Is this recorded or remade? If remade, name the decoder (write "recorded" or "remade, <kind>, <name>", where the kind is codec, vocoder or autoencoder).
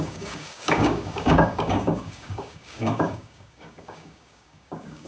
remade, codec, DAC